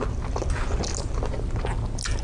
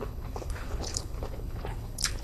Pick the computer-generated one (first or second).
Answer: second